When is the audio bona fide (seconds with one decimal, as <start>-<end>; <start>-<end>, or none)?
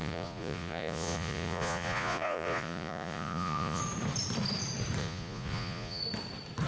3.8-5.0; 6.0-6.7